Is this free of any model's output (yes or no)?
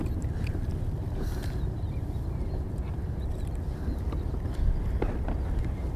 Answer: yes